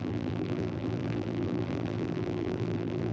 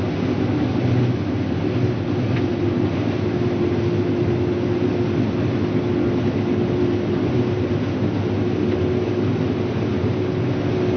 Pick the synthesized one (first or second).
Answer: first